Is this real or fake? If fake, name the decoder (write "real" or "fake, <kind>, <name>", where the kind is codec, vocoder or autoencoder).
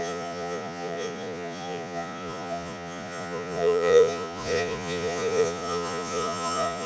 fake, vocoder, Vocos